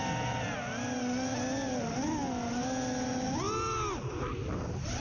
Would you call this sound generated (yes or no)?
no